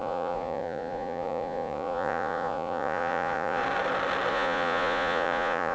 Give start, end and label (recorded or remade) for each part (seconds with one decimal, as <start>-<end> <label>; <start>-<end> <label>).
0.0-3.6 remade; 3.6-4.3 recorded; 4.3-5.7 remade